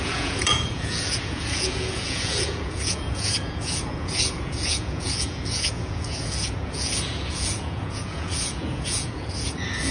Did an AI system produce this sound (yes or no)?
yes